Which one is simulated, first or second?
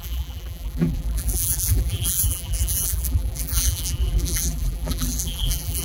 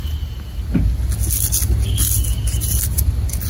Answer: first